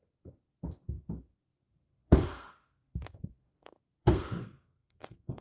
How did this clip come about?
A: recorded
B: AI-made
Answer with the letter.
B